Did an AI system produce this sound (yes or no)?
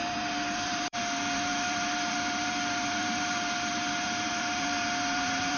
yes